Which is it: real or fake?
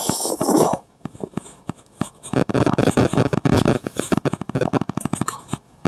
fake